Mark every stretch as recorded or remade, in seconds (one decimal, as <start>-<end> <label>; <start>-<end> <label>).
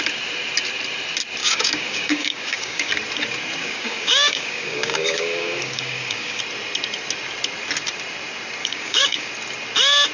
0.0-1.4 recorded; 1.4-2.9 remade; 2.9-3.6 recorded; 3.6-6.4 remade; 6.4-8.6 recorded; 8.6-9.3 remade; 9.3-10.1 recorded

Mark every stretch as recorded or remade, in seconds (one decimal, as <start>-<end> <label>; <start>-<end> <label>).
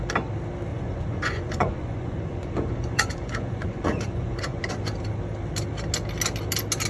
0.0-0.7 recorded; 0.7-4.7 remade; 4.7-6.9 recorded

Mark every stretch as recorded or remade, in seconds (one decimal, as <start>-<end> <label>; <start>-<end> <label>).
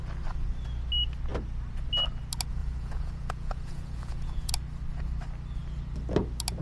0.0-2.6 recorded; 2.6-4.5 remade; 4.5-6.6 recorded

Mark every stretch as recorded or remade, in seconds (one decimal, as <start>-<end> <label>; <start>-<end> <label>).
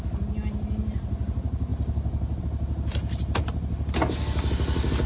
0.0-5.1 recorded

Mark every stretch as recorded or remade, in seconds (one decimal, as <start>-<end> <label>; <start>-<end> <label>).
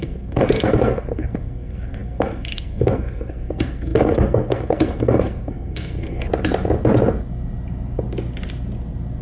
0.0-6.3 remade; 6.3-9.2 recorded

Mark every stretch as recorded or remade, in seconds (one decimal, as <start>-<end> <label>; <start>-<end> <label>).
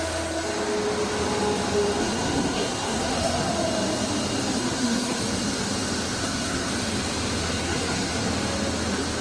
0.0-2.0 recorded; 2.0-3.5 remade; 3.5-4.6 recorded; 4.6-5.2 remade; 5.2-6.2 recorded; 6.2-6.7 remade; 6.7-7.4 recorded; 7.4-8.3 remade; 8.3-9.2 recorded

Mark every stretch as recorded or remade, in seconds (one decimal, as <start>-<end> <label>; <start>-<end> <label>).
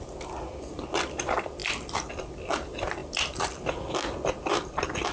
0.0-5.1 recorded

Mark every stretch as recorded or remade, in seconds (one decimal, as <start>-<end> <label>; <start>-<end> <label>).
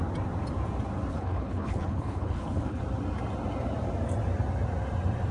0.0-1.1 recorded; 1.1-2.8 remade; 2.8-5.3 recorded